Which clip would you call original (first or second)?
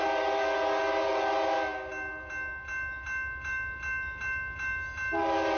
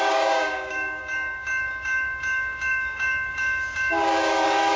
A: first